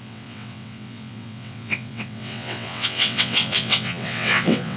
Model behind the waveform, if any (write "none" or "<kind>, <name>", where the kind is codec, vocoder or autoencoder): vocoder, WaveNeXt